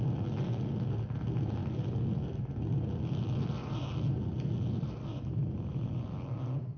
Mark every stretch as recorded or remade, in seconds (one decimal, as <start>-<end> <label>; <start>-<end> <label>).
0.0-6.8 recorded